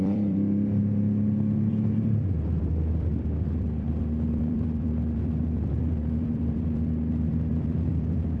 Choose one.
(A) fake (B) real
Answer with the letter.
A